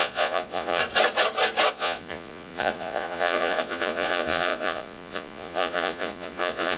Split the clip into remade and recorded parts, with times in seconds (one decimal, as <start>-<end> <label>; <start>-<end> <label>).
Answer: 0.0-0.8 remade; 0.8-1.7 recorded; 1.7-6.8 remade